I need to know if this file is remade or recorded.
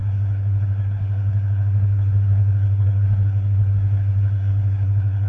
remade